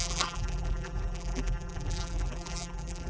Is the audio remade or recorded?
remade